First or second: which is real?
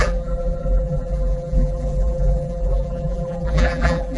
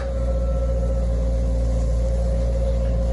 second